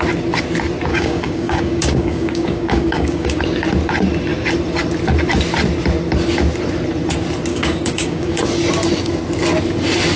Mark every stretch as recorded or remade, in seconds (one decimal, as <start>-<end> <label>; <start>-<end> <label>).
0.0-0.9 recorded; 0.9-3.4 remade; 3.4-7.5 recorded; 7.5-8.4 remade; 8.4-10.2 recorded